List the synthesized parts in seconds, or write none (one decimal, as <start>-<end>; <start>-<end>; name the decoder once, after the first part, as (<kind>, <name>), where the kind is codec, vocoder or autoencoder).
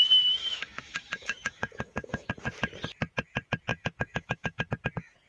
0.4-2.3 (autoencoder, DAC-VAE); 3.7-4.7